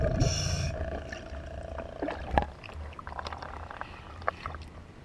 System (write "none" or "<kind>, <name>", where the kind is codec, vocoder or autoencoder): none